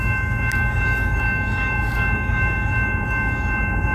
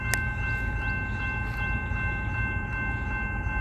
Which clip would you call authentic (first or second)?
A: second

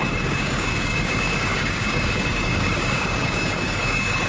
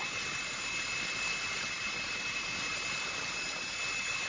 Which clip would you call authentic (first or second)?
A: second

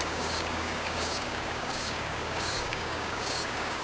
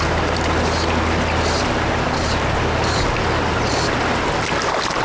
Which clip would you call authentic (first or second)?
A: second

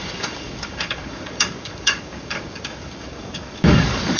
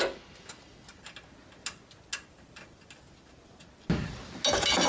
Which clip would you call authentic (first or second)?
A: second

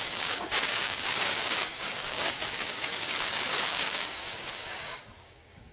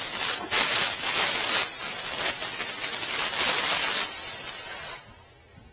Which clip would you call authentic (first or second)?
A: second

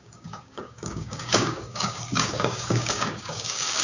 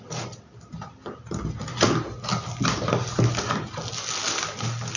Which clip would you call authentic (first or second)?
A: second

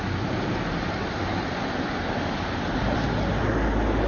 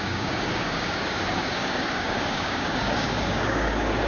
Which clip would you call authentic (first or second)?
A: first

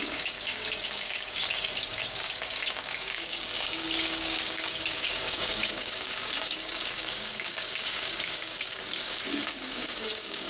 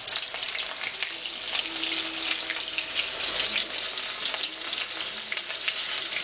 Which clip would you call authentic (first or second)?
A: second